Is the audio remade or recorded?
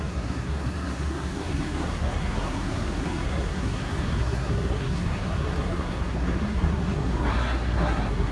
remade